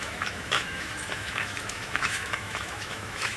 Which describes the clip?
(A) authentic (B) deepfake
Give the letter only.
B